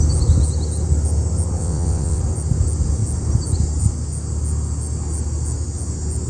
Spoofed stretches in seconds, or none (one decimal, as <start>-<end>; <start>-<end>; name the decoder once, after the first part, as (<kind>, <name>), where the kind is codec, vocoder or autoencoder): 1.6-2.2 (vocoder, WaveNeXt)